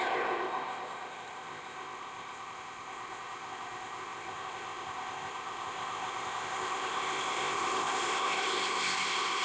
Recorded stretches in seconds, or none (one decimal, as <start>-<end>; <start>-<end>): none